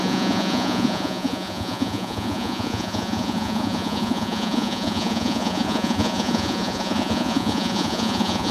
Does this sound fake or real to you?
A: fake